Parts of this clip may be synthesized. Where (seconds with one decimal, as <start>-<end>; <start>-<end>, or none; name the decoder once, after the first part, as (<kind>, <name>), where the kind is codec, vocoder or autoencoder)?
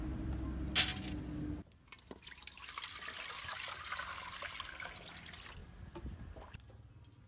none